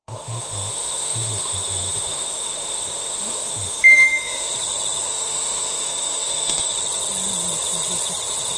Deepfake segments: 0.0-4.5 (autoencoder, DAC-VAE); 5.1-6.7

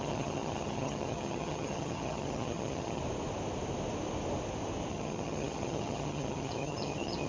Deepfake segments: 0.0-3.0 (vocoder, HiFi-GAN); 4.9-7.3

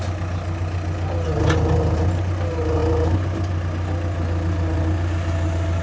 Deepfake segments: none